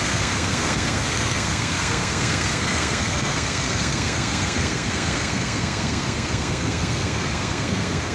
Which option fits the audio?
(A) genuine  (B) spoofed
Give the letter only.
B